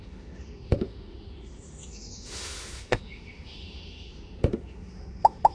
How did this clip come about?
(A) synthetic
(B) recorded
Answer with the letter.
A